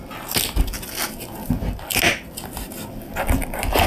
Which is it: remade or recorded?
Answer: recorded